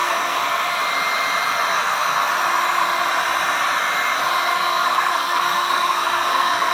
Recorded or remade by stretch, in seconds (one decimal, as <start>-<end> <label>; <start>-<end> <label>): 0.0-0.8 remade; 0.8-1.7 recorded; 1.7-2.3 remade; 2.3-4.5 recorded; 4.5-6.7 remade